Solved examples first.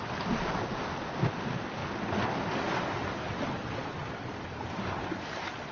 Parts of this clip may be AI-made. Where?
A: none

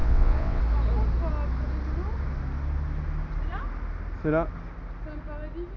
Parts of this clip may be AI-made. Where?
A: 0.0-0.6

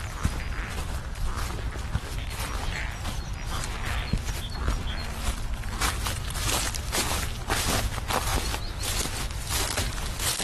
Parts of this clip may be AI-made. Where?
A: none

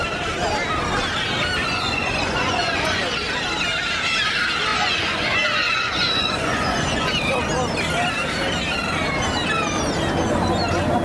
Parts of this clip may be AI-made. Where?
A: 1.6-3.0; 4.7-7.1

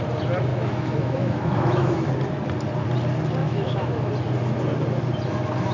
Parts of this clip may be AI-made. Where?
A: 0.5-2.1; 3.4-4.1

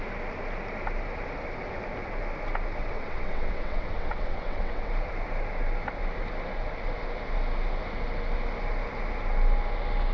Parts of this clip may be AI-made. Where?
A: 2.8-4.9

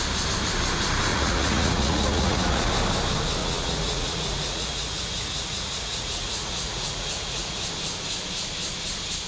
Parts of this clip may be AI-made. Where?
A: 1.1-2.7; 3.4-7.7